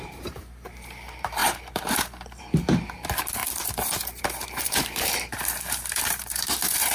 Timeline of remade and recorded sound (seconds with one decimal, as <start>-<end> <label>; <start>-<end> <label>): 0.0-3.4 remade; 3.4-4.2 recorded; 4.2-6.9 remade